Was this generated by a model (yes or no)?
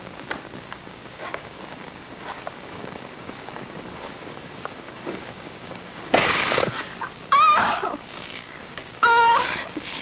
yes